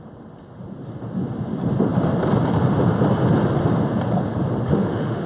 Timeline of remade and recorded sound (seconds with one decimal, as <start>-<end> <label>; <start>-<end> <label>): 0.0-4.7 recorded; 4.7-5.3 remade